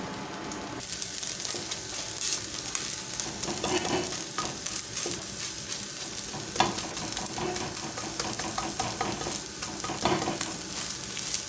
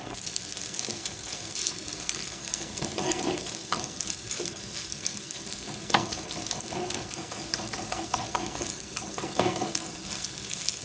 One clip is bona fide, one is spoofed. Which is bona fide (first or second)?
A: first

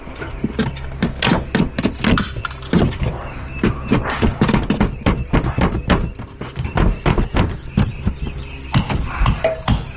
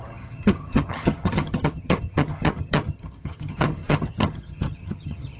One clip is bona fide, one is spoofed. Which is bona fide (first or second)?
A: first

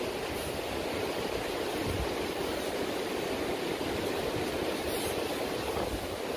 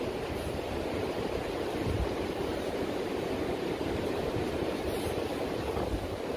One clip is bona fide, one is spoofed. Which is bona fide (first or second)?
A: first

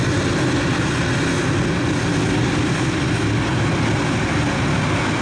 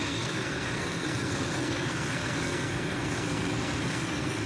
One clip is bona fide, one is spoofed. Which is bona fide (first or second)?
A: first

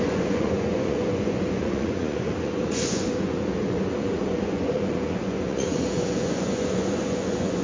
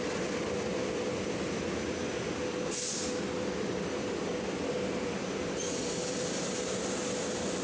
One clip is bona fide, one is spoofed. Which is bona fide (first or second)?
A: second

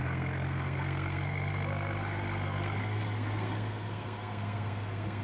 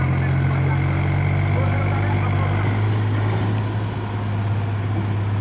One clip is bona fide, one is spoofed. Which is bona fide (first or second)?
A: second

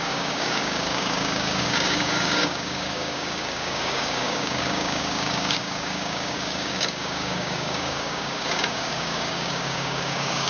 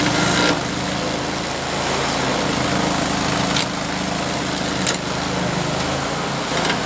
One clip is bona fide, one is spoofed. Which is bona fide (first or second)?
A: second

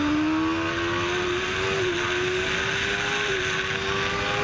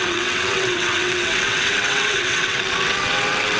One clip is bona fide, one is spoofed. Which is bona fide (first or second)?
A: first